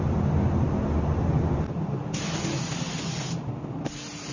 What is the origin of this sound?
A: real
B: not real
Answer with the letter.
A